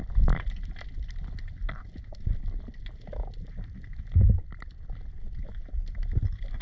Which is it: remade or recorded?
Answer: recorded